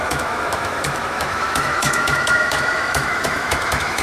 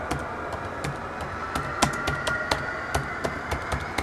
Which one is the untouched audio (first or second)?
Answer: second